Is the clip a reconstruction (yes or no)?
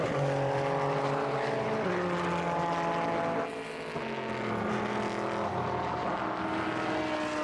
no